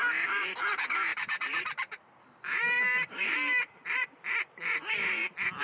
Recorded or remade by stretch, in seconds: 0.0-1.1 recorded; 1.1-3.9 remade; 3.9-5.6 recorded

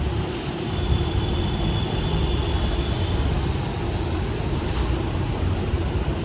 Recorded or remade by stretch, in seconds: 0.0-1.3 remade; 1.3-5.0 recorded; 5.0-6.2 remade

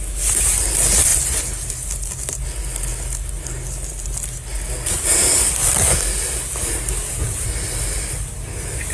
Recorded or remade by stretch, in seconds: 0.0-1.1 recorded; 1.1-2.4 remade; 2.4-2.9 recorded; 2.9-5.1 remade; 5.1-8.9 recorded

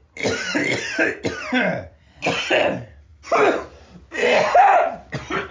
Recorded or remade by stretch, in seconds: 0.0-3.1 remade; 3.1-4.6 recorded; 4.6-5.5 remade

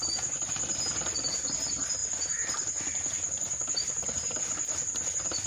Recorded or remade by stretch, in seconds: 0.0-2.0 recorded; 2.0-4.4 remade; 4.4-5.5 recorded

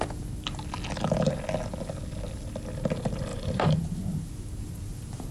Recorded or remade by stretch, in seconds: 0.0-3.3 recorded; 3.3-3.8 remade; 3.8-5.3 recorded

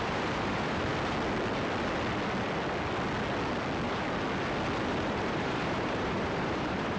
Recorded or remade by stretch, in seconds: 0.0-0.9 remade; 0.9-4.8 recorded; 4.8-7.0 remade

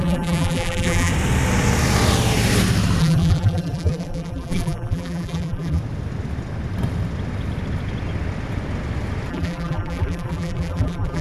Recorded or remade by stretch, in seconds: 0.0-1.1 remade; 1.1-3.0 recorded; 3.0-5.8 remade; 5.8-9.3 recorded; 9.3-11.2 remade